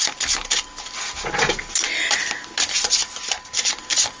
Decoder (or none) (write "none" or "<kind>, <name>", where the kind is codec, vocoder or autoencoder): none